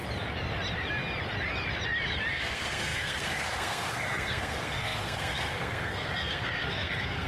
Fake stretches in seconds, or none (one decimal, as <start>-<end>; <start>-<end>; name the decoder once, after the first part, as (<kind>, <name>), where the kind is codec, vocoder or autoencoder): 2.3-7.3 (codec, SNAC)